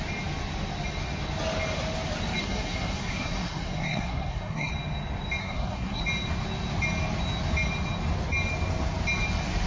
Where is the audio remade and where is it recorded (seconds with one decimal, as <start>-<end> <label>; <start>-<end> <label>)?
0.0-2.4 recorded; 2.4-4.7 remade; 4.7-5.4 recorded; 5.4-6.0 remade; 6.0-9.7 recorded